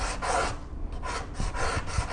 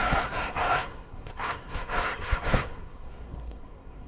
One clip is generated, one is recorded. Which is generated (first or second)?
second